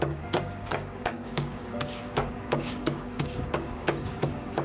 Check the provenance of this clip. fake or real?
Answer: fake